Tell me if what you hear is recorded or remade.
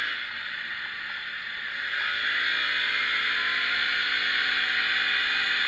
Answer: recorded